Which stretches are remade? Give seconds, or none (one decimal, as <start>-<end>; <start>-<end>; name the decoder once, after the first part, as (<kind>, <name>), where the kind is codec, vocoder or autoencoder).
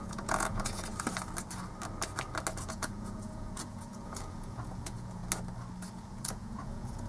0.0-0.9 (vocoder, Vocos); 2.6-5.2; 5.9-7.1